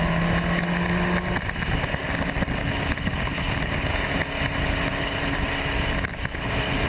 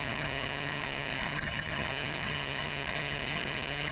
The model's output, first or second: second